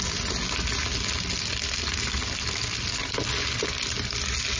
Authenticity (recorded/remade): recorded